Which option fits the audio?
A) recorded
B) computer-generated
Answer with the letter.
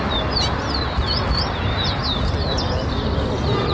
A